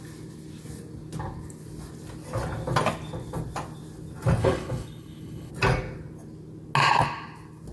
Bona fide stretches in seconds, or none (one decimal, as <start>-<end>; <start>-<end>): 0.0-4.4; 5.5-7.7